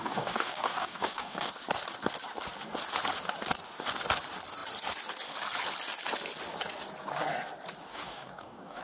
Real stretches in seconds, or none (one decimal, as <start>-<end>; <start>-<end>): 1.5-7.9